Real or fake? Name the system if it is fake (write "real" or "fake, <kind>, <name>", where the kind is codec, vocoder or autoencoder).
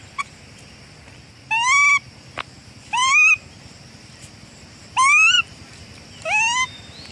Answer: real